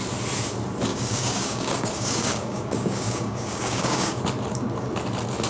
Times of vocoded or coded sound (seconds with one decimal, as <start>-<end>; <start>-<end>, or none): 0.9-4.2